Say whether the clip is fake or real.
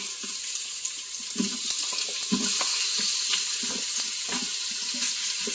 real